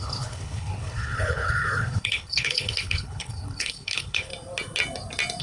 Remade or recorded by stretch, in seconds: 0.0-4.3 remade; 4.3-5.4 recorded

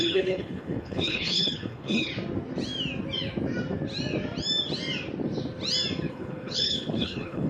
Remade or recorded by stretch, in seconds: 0.0-2.1 remade; 2.1-6.1 recorded; 6.1-7.5 remade

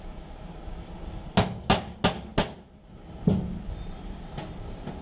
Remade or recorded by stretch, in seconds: 0.0-5.0 recorded

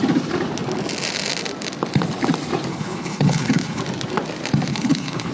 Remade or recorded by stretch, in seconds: 0.0-2.7 recorded; 2.7-3.8 remade; 3.8-4.7 recorded; 4.7-5.3 remade

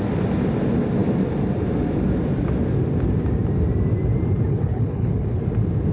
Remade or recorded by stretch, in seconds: 0.0-4.5 recorded; 4.5-5.4 remade; 5.4-5.9 recorded